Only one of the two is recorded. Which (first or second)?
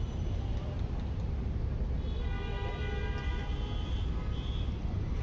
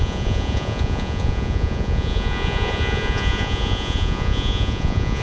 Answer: first